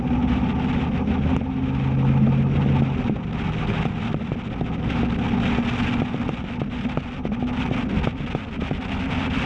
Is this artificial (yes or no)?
no